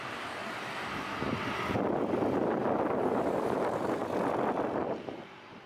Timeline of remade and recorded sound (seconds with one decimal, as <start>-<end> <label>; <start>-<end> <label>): 0.0-0.4 remade; 0.4-3.1 recorded; 3.1-4.0 remade; 4.0-4.8 recorded; 4.8-5.7 remade